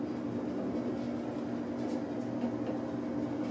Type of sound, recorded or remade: recorded